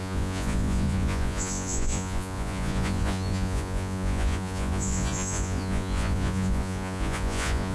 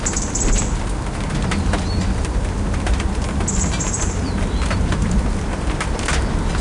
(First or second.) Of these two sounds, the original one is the second